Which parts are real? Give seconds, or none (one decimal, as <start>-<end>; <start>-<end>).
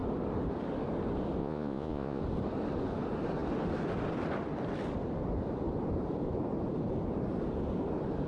0.0-1.4; 2.2-8.3